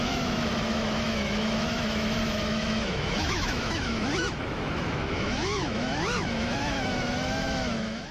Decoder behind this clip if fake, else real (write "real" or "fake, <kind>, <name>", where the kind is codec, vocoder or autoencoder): fake, autoencoder, DAC-VAE